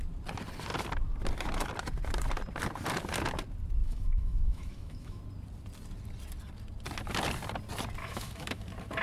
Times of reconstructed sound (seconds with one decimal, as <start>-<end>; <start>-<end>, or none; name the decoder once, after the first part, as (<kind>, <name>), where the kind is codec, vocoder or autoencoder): 3.8-5.2 (autoencoder, DAC-VAE); 8.0-8.6